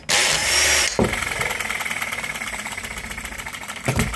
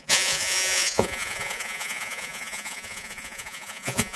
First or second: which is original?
first